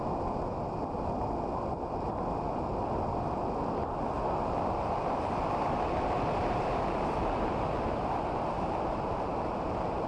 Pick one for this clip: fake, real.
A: real